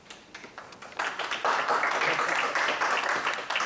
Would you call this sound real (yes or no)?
yes